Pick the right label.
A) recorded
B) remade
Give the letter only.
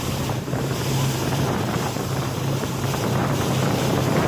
B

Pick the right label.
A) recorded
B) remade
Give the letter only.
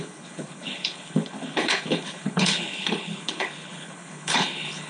B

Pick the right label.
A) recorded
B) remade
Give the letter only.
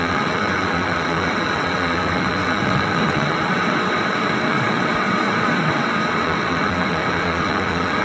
B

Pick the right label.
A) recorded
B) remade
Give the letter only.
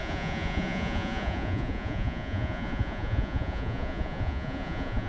B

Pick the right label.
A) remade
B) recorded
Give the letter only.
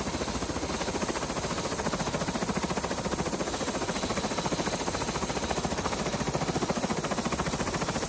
B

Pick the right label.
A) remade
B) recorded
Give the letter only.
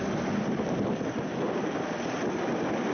B